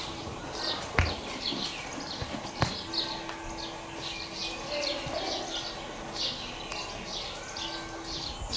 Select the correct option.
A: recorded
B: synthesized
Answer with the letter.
A